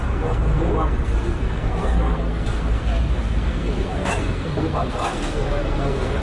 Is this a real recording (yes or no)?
no